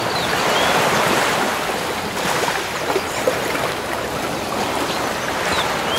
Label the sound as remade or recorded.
recorded